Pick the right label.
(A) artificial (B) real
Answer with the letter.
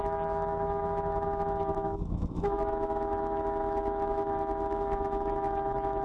A